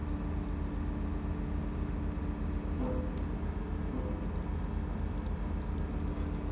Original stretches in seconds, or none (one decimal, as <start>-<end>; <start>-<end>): 0.0-6.5